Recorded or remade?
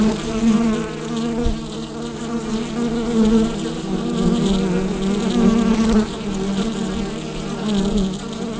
recorded